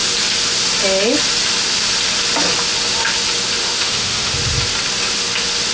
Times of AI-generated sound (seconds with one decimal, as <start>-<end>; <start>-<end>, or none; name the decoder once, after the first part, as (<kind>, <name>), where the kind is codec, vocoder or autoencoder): 3.6-4.3 (autoencoder, DAC-VAE)